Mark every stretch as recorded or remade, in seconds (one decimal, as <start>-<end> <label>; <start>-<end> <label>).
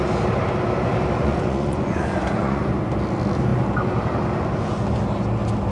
0.0-1.2 recorded; 1.2-2.6 remade; 2.6-5.7 recorded